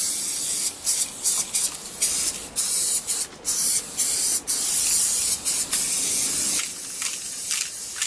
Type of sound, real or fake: real